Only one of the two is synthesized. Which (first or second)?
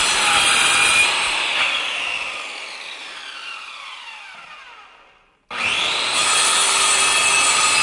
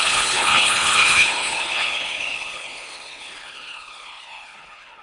second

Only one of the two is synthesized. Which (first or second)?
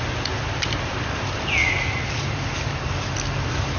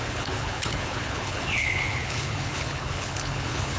second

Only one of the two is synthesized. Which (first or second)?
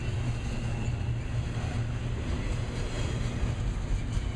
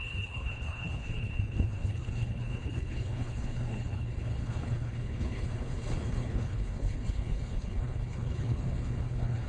second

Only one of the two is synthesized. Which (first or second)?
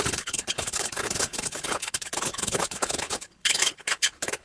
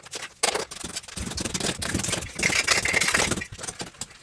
first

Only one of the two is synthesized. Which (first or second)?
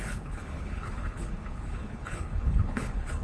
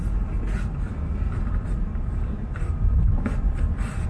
first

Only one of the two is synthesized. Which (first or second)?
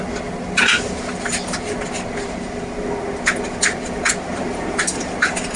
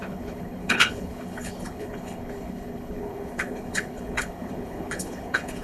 second